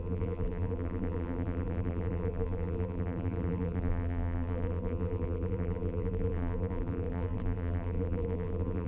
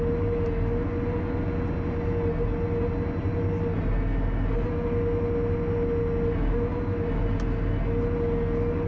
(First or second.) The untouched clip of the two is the second